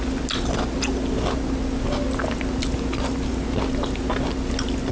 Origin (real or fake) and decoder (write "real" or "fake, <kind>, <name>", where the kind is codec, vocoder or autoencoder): real